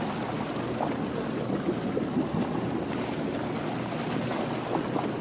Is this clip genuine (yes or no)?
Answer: yes